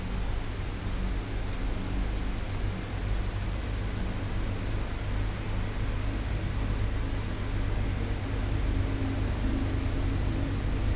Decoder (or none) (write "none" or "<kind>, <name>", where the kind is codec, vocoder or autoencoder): none